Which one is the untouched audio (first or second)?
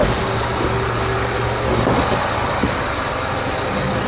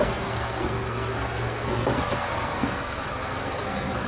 first